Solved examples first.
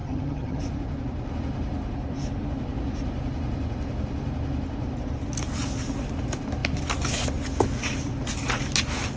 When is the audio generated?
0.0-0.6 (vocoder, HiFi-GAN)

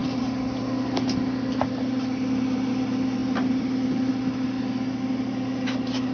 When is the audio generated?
none

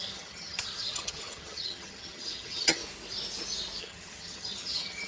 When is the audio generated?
0.0-2.8 (vocoder, HiFi-GAN); 3.8-5.1